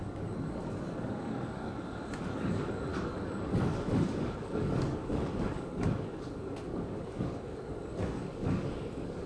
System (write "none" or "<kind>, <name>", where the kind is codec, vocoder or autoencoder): codec, DAC